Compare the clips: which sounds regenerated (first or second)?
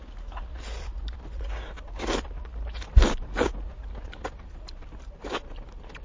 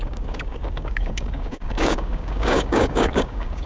second